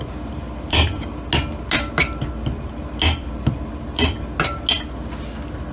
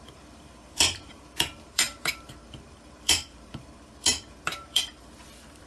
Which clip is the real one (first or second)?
first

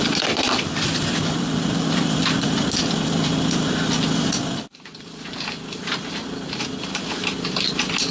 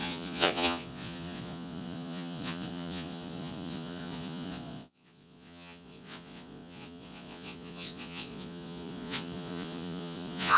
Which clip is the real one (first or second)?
first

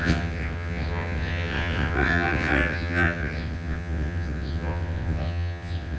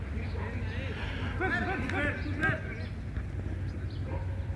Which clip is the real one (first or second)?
second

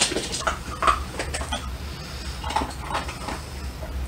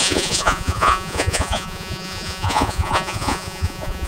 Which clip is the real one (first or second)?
first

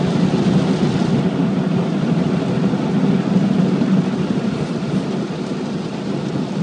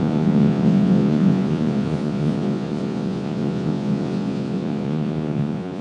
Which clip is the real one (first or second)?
first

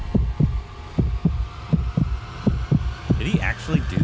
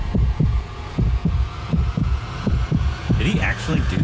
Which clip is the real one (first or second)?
first